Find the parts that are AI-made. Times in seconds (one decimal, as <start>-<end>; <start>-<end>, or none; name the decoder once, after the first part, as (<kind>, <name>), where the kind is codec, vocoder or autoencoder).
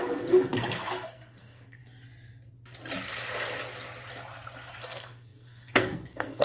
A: 0.0-1.8 (codec, SNAC); 4.8-6.4